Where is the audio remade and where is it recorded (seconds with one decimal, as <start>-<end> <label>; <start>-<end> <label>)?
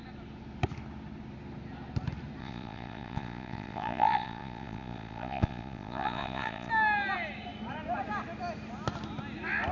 0.0-2.4 recorded; 2.4-6.7 remade; 6.7-9.7 recorded